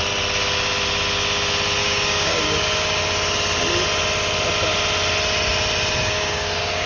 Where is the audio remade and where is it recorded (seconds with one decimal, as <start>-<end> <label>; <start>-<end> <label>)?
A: 0.0-1.8 recorded; 1.8-3.0 remade; 3.0-6.0 recorded; 6.0-6.9 remade